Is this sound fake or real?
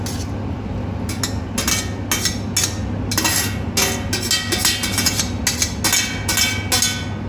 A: real